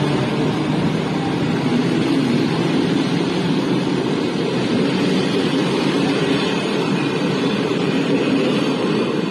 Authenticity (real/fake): fake